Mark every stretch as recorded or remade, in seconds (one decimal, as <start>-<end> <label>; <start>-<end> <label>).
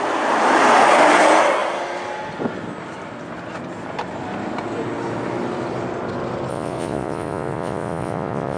0.0-6.5 recorded; 6.5-8.6 remade